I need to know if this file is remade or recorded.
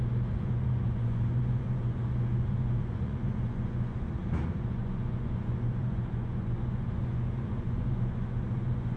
remade